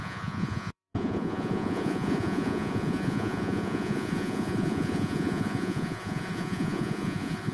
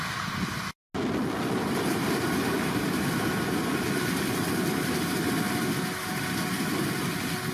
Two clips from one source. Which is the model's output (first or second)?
first